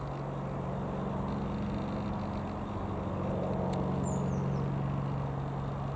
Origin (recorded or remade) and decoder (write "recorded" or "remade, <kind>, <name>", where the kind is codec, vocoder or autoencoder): recorded